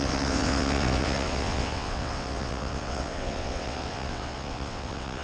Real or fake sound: fake